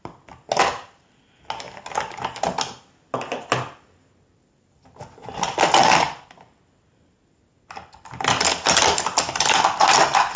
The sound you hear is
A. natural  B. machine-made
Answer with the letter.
A